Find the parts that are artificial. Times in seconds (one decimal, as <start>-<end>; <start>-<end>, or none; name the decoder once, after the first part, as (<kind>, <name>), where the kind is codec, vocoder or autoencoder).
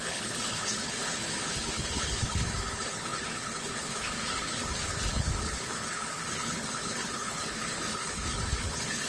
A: 0.0-9.1 (codec, HILCodec)